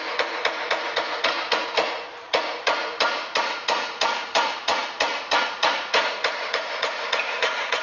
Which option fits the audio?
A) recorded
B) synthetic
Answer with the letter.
B